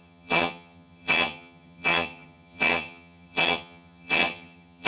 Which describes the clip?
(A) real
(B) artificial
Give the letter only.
B